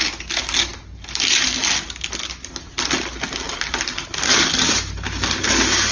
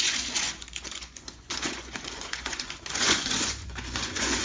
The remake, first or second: second